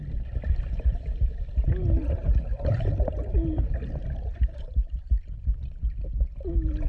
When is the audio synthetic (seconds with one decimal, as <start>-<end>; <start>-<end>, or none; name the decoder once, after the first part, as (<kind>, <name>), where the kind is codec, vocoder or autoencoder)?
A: 2.2-2.9 (vocoder, BigVGAN v2); 4.4-5.0